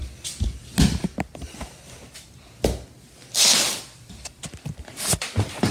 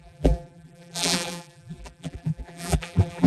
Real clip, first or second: first